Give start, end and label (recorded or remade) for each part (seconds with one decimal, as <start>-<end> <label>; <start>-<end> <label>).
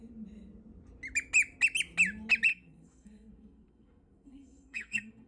0.0-2.5 recorded; 2.5-5.3 remade